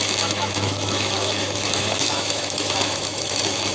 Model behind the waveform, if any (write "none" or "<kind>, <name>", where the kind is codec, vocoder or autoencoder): autoencoder, DAC-VAE